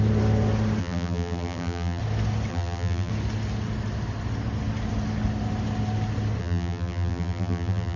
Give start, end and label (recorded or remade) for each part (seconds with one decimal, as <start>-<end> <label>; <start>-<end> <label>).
0.0-0.8 recorded; 0.8-2.0 remade; 2.0-2.5 recorded; 2.5-3.1 remade; 3.1-6.4 recorded; 6.4-8.0 remade